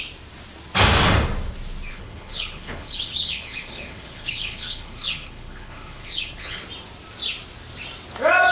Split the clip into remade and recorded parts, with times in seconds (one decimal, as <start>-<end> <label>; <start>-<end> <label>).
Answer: 0.0-1.9 recorded; 1.9-6.6 remade; 6.6-8.5 recorded